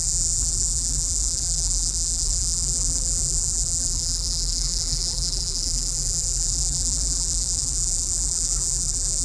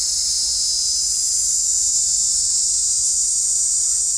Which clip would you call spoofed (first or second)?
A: first